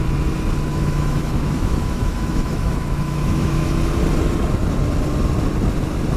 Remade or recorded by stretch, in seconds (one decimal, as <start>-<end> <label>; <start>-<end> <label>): 0.0-0.7 recorded; 0.7-3.7 remade; 3.7-6.2 recorded